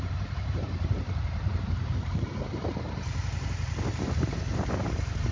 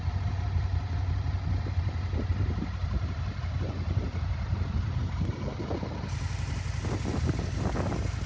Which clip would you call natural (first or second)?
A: second